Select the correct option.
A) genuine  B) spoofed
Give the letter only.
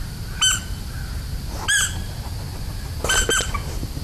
A